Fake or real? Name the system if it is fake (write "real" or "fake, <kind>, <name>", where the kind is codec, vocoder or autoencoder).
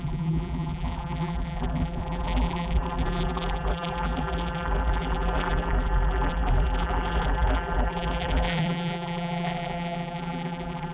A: fake, vocoder, BigVGAN v2